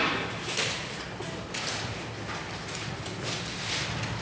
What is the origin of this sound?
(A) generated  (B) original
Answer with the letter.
B